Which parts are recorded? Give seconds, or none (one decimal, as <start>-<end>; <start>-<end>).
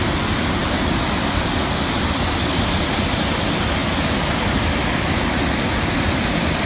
0.0-6.7